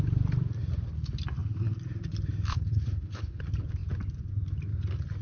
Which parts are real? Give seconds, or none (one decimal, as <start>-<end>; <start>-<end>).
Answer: 0.0-2.5; 3.4-5.2